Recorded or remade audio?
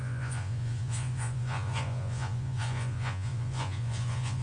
remade